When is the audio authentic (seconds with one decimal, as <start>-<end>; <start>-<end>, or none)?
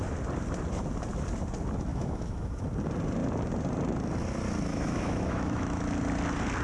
0.0-1.9; 2.6-4.7; 5.8-6.6